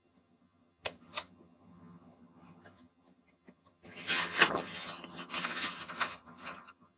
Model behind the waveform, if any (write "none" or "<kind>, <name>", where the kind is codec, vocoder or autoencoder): vocoder, HiFi-GAN